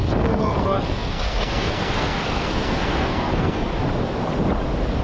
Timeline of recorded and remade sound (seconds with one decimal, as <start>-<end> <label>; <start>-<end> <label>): 0.0-3.7 remade; 3.7-5.0 recorded